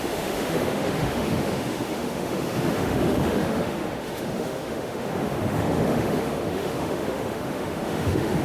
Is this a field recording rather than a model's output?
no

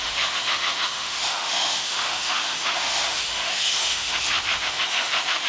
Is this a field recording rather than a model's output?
no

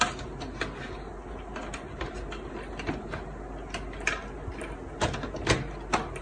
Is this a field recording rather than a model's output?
yes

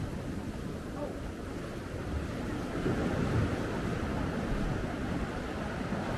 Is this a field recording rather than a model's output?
yes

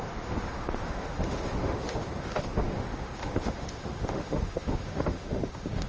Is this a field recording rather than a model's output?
no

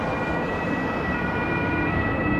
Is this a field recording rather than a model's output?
yes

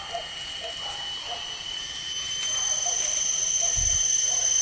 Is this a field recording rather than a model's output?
yes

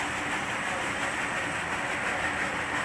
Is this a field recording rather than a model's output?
yes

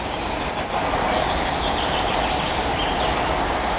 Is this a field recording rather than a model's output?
yes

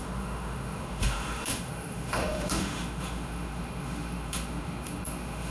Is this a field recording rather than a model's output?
no